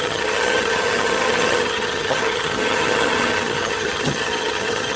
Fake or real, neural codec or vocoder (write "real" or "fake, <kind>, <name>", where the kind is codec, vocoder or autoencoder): fake, vocoder, HiFi-GAN